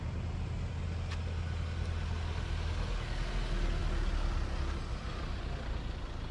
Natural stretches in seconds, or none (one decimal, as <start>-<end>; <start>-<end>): 0.0-6.3